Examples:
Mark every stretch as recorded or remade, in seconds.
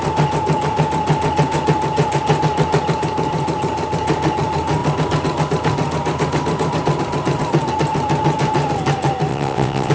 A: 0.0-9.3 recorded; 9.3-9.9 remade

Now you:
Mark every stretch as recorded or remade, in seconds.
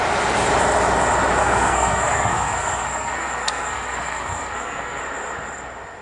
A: 0.0-1.4 recorded; 1.4-5.0 remade; 5.0-6.0 recorded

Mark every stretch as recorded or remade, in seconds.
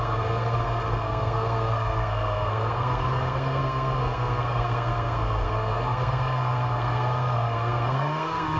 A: 0.0-8.6 remade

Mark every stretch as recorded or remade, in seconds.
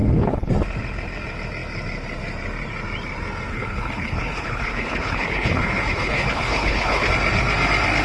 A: 0.0-0.5 remade; 0.5-3.5 recorded; 3.5-7.1 remade; 7.1-8.0 recorded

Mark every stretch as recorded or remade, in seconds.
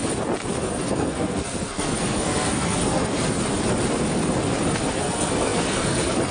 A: 0.0-0.6 recorded; 0.6-3.1 remade; 3.1-5.0 recorded; 5.0-6.3 remade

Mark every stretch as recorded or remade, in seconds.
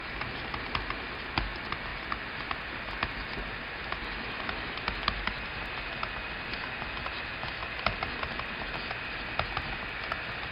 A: 0.0-10.5 recorded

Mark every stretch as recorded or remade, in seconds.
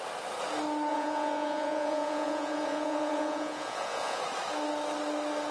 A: 0.0-0.9 recorded; 0.9-4.2 remade; 4.2-5.5 recorded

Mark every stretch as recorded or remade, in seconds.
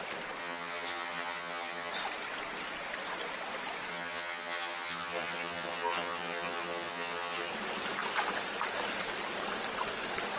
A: 0.0-0.4 recorded; 0.4-1.9 remade; 1.9-3.9 recorded; 3.9-7.5 remade; 7.5-10.4 recorded